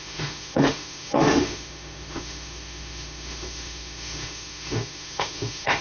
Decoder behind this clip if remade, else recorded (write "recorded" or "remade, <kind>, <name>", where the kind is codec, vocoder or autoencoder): remade, autoencoder, DAC-VAE